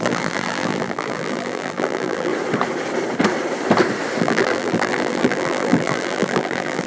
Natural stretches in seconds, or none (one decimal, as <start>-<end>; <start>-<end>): 2.3-4.2